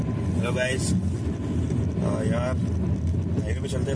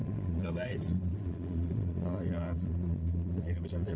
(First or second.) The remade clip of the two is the second